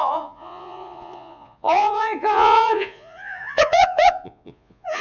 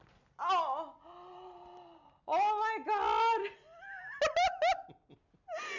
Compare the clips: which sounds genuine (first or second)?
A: second